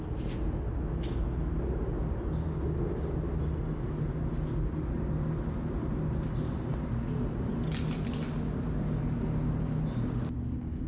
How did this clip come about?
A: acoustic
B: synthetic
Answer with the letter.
A